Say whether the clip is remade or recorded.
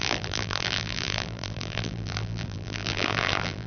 remade